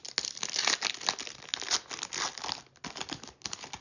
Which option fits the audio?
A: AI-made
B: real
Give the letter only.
B